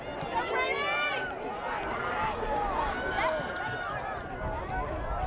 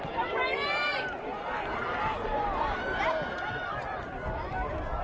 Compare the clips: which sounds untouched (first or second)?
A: first